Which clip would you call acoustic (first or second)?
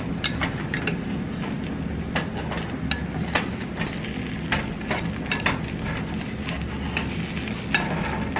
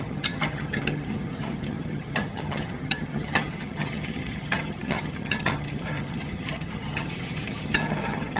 first